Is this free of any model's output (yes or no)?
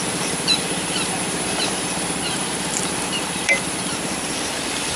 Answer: no